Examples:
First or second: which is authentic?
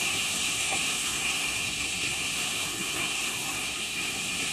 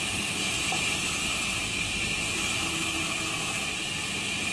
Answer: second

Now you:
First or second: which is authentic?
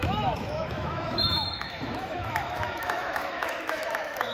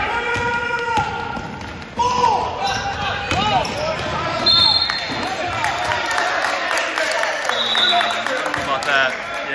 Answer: second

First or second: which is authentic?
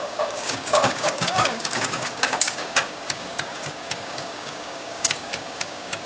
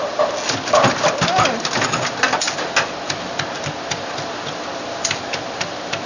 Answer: second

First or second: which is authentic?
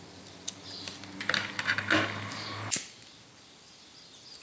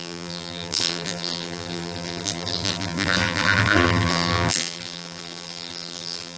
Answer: first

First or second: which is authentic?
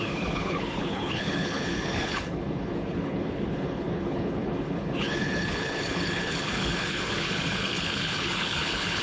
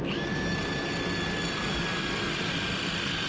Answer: second